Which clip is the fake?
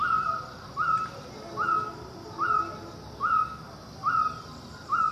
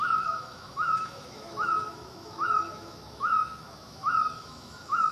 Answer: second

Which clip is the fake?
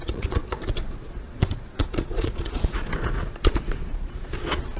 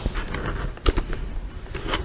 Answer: first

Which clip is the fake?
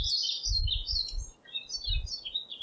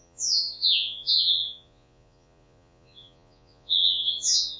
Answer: second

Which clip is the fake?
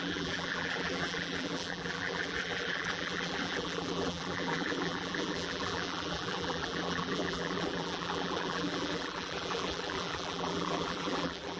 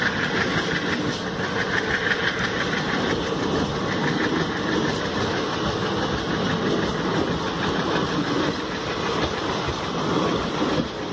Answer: first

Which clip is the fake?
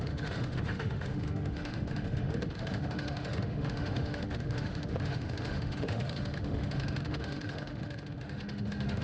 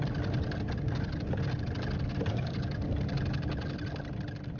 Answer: first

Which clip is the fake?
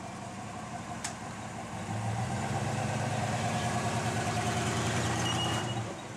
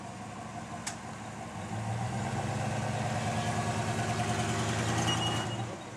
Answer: first